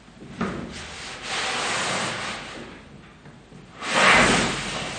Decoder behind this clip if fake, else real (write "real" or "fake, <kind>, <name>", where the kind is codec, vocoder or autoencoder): real